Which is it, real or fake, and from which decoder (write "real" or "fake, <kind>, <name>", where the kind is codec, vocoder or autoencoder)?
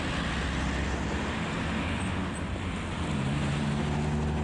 real